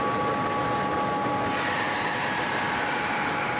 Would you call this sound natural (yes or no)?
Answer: yes